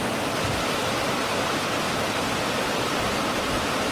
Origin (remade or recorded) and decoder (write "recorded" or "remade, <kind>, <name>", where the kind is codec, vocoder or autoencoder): recorded